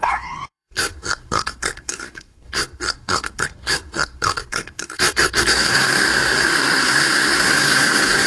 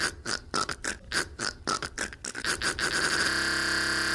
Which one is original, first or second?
second